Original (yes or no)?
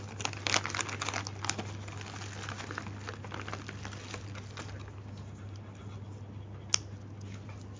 yes